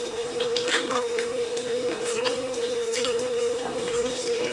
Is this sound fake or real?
fake